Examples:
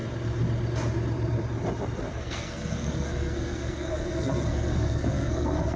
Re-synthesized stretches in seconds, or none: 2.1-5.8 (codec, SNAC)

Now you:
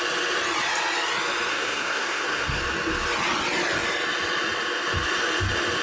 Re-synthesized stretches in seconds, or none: 1.5-2.6 (codec, SNAC)

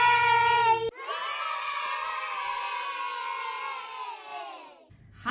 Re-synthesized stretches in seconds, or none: none

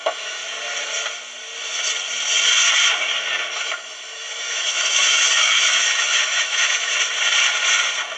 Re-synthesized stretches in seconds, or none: 0.0-0.4 (autoencoder, DAC-VAE); 3.5-6.9

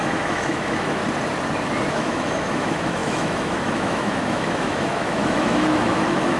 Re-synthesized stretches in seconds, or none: 0.0-1.0 (autoencoder, DAC-VAE); 1.9-6.4

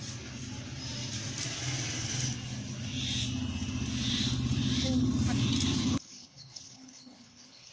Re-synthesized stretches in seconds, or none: 5.8-7.7 (codec, HILCodec)

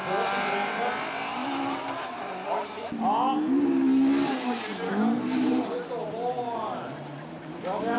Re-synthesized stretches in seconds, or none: none